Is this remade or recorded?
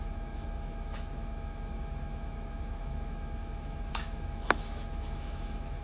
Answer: remade